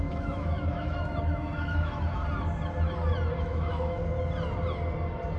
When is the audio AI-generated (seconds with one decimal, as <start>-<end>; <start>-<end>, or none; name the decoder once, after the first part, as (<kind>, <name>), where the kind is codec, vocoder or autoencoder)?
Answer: 0.0-2.2 (autoencoder, DAC-VAE); 3.4-4.0